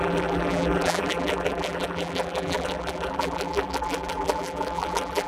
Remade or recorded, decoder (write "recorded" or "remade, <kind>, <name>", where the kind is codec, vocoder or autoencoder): remade, vocoder, BigVGAN v2